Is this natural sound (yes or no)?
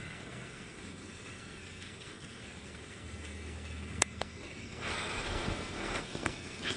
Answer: no